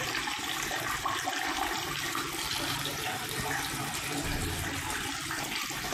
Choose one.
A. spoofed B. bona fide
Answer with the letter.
A